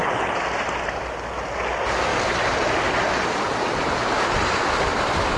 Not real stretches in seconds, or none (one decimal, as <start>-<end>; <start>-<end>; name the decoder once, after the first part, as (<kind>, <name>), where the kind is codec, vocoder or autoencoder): none